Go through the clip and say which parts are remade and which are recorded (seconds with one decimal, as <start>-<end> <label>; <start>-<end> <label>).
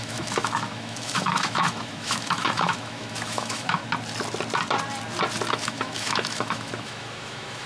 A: 0.0-3.8 remade; 3.8-5.5 recorded; 5.5-7.7 remade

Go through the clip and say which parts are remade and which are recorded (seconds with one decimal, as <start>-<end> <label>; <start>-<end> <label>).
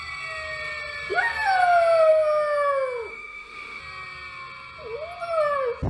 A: 0.0-3.1 recorded; 3.1-3.8 remade; 3.8-5.9 recorded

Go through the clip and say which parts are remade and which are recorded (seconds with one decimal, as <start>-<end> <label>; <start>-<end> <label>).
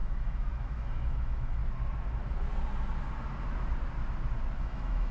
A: 0.0-1.6 remade; 1.6-4.6 recorded; 4.6-5.1 remade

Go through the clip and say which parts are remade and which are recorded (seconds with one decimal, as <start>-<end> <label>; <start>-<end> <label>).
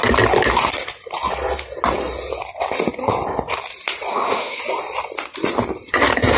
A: 0.0-4.1 recorded; 4.1-4.6 remade; 4.6-6.4 recorded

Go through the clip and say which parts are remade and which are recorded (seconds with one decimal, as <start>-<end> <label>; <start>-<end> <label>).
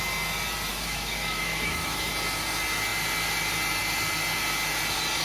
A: 0.0-0.7 recorded; 0.7-2.1 remade; 2.1-5.2 recorded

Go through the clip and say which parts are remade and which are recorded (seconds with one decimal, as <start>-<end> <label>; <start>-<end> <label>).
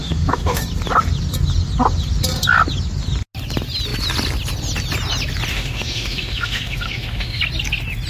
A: 0.0-0.6 remade; 0.6-5.5 recorded; 5.5-7.4 remade; 7.4-8.1 recorded